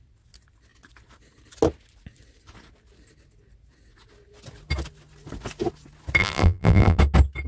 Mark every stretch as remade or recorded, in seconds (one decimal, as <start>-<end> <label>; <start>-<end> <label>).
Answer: 0.0-6.2 recorded; 6.2-7.0 remade; 7.0-7.5 recorded

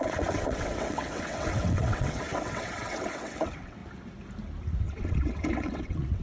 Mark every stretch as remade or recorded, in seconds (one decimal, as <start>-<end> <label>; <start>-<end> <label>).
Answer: 0.0-3.8 remade; 3.8-4.8 recorded; 4.8-6.2 remade

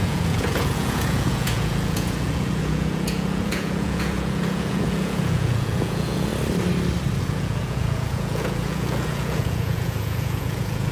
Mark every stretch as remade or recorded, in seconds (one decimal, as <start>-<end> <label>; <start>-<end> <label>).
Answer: 0.0-6.3 remade; 6.3-7.2 recorded; 7.2-10.9 remade

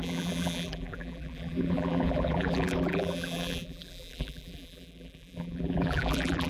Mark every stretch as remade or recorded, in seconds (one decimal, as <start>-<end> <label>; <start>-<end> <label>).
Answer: 0.0-6.5 remade